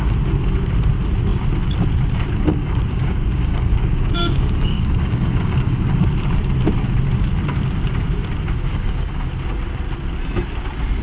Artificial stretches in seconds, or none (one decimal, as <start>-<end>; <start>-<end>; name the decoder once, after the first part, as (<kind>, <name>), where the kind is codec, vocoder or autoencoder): 2.5-6.1 (codec, DAC); 8.7-9.3